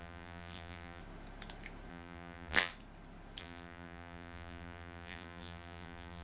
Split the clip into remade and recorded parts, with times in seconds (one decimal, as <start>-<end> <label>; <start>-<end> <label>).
0.0-1.0 remade; 1.0-1.9 recorded; 1.9-2.7 remade; 2.7-3.4 recorded; 3.4-6.2 remade